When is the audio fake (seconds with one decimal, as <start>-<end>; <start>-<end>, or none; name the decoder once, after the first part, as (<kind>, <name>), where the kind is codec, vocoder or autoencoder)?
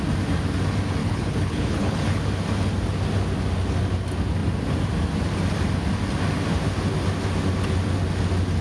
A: 1.0-2.2 (codec, HILCodec)